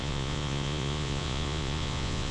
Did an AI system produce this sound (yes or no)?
yes